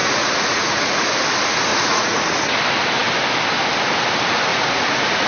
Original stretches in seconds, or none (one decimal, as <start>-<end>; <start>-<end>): 1.1-1.7; 2.5-4.5